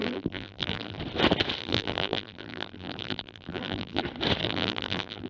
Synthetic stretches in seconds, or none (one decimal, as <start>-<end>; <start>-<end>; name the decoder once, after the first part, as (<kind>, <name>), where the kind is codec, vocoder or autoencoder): 0.0-1.0 (vocoder, BigVGAN v2); 1.6-4.0; 4.4-5.3